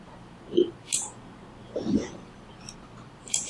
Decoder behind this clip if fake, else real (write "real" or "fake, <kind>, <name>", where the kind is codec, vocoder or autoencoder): real